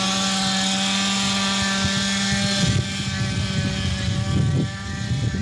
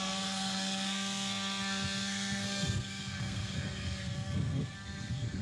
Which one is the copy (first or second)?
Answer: second